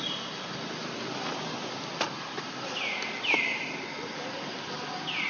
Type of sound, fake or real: real